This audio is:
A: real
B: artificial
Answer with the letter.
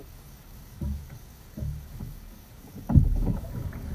B